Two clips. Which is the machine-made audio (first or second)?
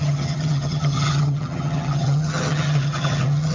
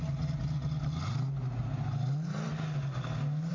first